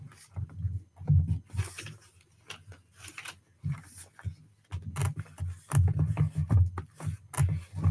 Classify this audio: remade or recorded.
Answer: recorded